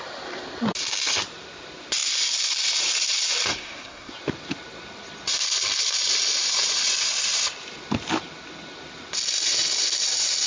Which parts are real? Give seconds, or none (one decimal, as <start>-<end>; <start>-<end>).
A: 0.0-3.5; 4.1-10.5

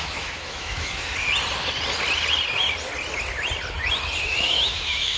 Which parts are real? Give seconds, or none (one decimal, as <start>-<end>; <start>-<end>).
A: 1.1-4.2

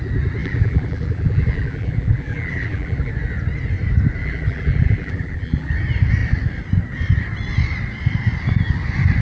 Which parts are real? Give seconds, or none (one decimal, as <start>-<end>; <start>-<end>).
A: 0.0-0.4; 3.1-4.2; 5.7-9.2

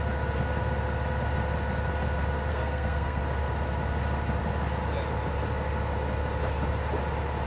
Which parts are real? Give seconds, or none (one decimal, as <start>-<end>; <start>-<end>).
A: 0.0-2.5; 3.2-7.5

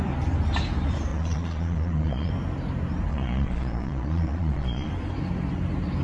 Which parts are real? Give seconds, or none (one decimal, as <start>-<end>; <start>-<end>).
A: 0.0-1.1; 2.3-3.1; 4.9-6.0

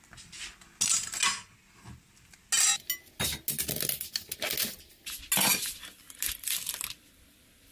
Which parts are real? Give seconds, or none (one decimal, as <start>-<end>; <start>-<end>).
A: 0.0-7.7

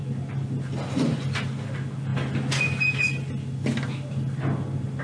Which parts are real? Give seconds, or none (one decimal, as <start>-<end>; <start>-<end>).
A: 0.0-5.0